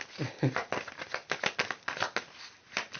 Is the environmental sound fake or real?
real